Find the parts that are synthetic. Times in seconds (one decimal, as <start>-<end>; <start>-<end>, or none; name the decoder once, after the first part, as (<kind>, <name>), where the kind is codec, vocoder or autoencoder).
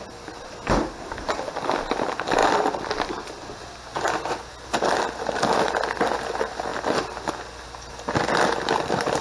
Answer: 2.4-3.5 (vocoder, BigVGAN v2)